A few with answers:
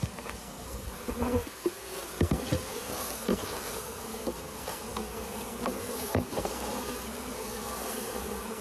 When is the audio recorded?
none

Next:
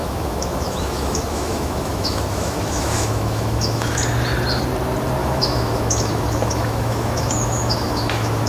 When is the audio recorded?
4.0-5.2

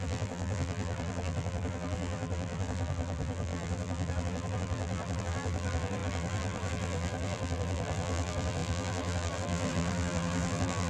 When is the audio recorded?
none

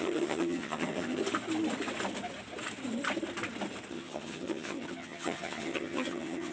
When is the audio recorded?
1.2-3.9

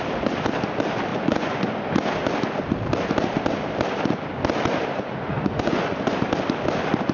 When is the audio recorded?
0.0-1.1; 1.7-4.9; 6.1-7.1

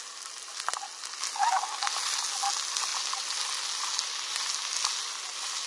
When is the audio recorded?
0.0-5.7

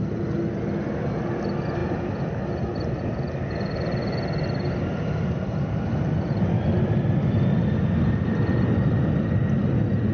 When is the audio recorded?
0.0-10.1